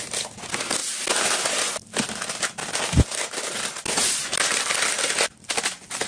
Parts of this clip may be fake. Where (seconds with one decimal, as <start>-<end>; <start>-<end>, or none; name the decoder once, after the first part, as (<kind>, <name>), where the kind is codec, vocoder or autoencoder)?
none